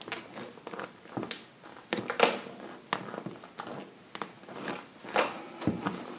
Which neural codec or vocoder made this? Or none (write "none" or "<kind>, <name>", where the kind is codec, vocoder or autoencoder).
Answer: none